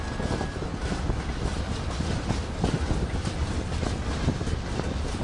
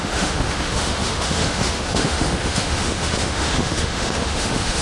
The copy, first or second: second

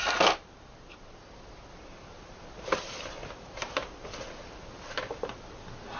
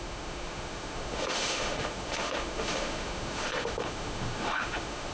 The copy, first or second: second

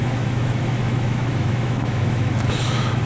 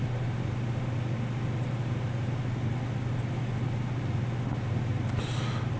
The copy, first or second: first